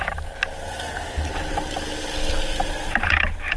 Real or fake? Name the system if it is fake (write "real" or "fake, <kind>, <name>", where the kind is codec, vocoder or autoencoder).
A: real